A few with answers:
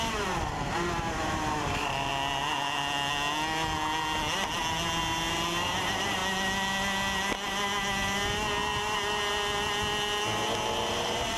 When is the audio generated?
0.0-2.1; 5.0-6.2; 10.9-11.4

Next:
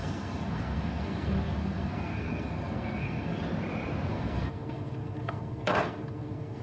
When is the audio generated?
0.0-3.4; 4.1-6.6